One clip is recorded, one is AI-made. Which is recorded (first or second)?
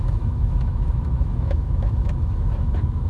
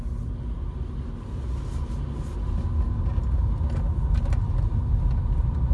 second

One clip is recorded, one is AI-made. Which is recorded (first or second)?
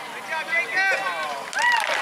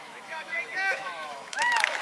first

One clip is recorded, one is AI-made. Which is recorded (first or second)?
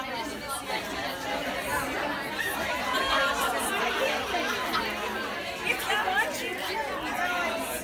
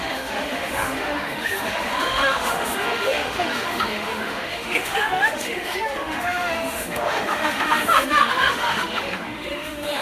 first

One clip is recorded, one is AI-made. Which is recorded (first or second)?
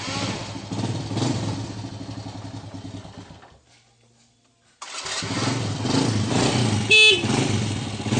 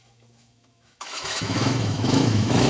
first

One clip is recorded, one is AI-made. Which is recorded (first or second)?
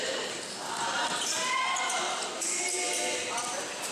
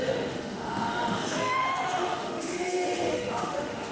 first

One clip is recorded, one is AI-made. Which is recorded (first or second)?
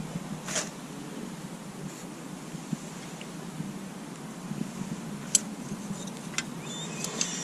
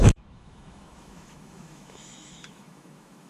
first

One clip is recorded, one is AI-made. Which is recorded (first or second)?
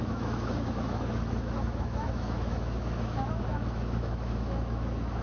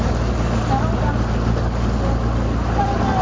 second